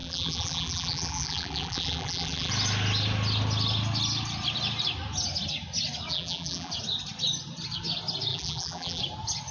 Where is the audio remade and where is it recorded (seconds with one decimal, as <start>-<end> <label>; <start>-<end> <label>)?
0.0-2.5 remade; 2.5-6.1 recorded; 6.1-6.7 remade; 6.7-8.3 recorded; 8.3-9.0 remade; 9.0-9.5 recorded